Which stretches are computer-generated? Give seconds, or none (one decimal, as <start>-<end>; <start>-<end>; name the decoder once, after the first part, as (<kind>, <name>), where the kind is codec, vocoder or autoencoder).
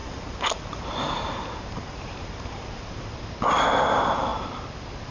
0.0-3.1 (vocoder, BigVGAN v2)